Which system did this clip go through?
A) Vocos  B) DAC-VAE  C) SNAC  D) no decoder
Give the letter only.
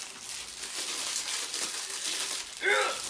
D